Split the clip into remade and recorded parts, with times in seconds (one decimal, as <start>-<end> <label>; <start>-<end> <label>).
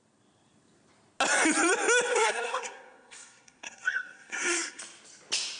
0.0-2.1 recorded; 2.1-4.8 remade; 4.8-5.6 recorded